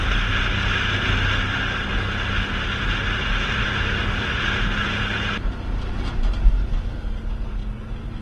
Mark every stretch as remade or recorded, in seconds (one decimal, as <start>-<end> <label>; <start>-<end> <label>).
0.0-8.2 recorded